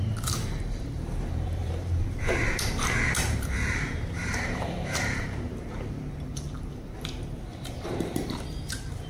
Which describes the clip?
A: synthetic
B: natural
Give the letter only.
A